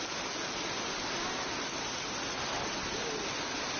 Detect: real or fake real